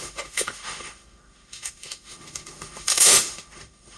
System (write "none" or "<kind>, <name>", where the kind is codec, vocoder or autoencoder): autoencoder, DAC-VAE